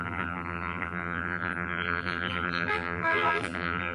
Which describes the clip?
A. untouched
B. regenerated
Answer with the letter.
B